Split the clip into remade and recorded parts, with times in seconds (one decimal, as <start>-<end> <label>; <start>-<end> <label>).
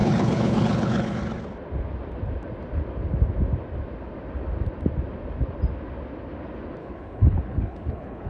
0.0-1.2 remade; 1.2-6.8 recorded; 6.8-8.3 remade